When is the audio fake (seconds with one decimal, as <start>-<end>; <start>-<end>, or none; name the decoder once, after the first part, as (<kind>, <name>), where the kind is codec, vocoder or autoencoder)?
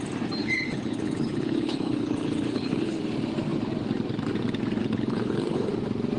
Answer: 0.4-3.0 (codec, HILCodec); 4.8-5.7